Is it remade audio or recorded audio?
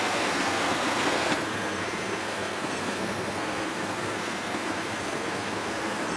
remade